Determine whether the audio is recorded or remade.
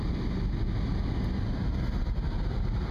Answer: recorded